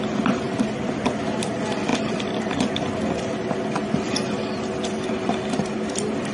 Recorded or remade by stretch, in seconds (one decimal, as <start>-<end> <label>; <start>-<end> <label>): 0.0-6.3 recorded